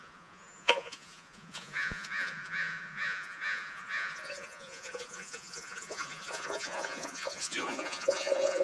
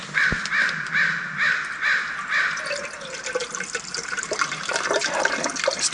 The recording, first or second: second